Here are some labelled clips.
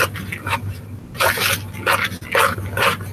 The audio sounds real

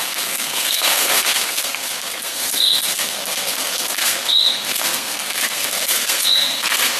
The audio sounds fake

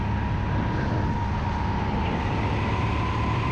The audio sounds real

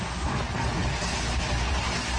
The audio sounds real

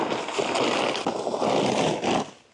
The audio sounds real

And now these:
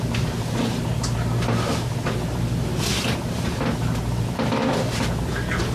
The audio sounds real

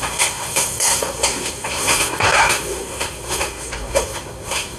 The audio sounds fake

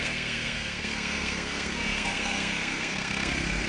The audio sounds fake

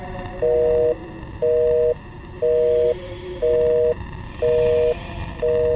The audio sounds real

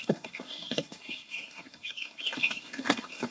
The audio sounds fake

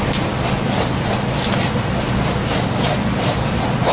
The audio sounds real